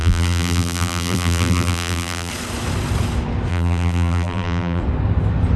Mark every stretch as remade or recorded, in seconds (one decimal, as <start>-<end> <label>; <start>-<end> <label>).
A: 0.0-2.3 remade; 2.3-3.5 recorded; 3.5-4.8 remade; 4.8-5.6 recorded